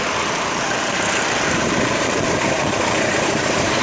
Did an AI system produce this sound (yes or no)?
yes